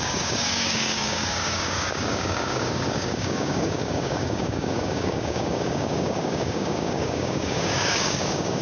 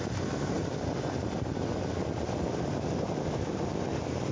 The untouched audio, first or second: second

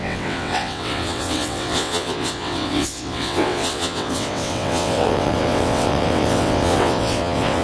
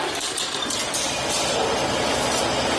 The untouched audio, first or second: second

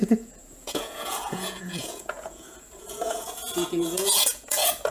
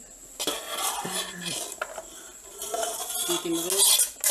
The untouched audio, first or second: second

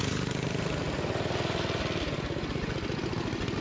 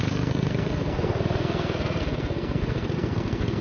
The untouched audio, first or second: first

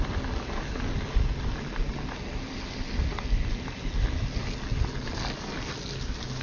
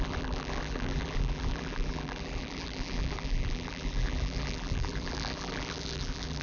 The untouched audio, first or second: first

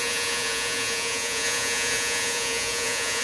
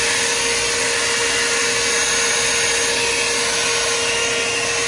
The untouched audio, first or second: second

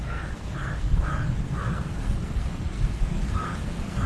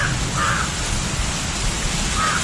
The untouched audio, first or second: second